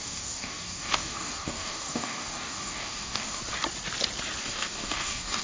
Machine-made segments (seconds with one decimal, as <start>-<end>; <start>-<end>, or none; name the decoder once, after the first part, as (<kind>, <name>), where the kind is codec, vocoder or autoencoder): 0.0-3.4 (codec, DAC); 4.4-5.4